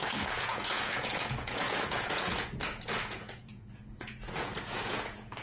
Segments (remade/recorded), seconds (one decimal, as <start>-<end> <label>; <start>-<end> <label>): 0.0-5.4 remade